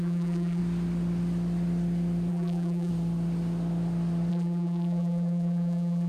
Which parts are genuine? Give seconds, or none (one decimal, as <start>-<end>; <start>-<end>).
0.6-2.3; 2.9-4.3